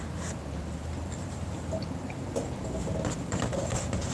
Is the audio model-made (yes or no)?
no